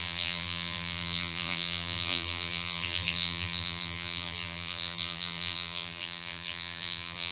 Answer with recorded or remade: remade